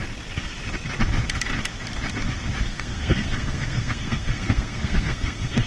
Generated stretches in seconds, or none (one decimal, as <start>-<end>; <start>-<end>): 2.7-5.7